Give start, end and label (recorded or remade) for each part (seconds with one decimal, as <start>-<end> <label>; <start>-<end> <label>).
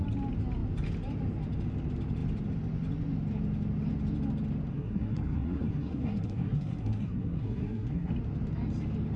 0.0-4.7 recorded; 4.7-8.1 remade; 8.1-9.2 recorded